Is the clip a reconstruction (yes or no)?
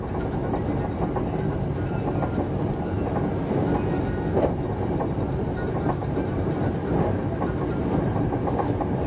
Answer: no